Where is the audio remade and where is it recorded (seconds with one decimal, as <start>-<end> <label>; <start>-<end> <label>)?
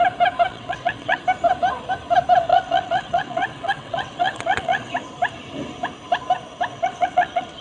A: 0.0-0.5 recorded; 0.5-1.2 remade; 1.2-2.5 recorded; 2.5-4.9 remade; 4.9-6.7 recorded; 6.7-7.6 remade